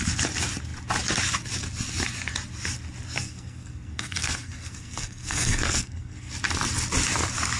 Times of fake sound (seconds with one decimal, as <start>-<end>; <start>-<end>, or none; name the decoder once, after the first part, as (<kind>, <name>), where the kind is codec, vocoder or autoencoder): 3.2-6.3 (codec, SNAC)